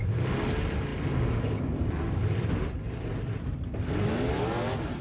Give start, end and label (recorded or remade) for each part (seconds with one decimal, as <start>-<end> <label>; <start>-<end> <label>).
0.0-5.0 recorded